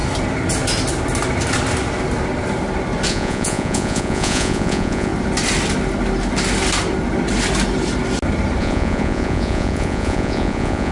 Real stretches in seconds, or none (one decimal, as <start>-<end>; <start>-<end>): 0.0-3.1; 5.1-8.6